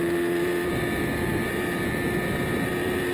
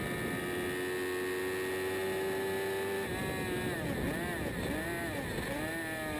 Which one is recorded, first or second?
second